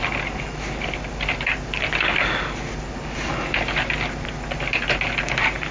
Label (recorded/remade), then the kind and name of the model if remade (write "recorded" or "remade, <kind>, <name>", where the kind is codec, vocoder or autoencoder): recorded